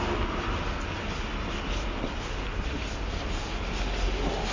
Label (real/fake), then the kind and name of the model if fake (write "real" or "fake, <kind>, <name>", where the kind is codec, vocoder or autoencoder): real